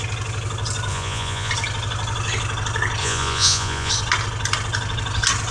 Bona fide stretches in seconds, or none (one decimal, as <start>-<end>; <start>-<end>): 0.0-0.9; 1.5-3.0; 3.9-5.5